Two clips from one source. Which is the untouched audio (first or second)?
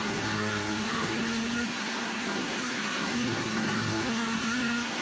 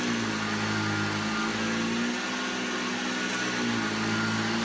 second